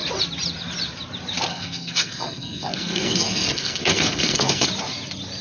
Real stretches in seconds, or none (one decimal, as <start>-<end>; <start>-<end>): 0.0-1.5; 4.7-5.4